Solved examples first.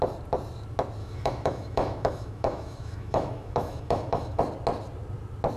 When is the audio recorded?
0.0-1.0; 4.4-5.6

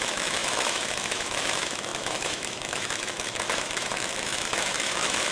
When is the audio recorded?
none

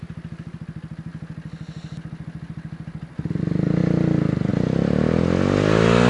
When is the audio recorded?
0.0-6.1

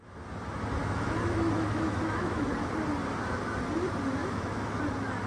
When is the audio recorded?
0.0-0.8; 2.5-4.2; 4.8-5.3